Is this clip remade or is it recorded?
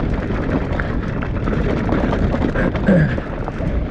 recorded